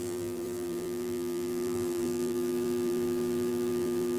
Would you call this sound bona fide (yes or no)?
no